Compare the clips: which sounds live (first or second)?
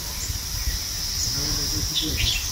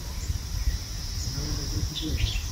first